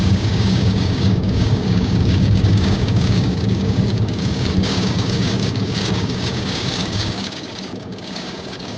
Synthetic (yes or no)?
yes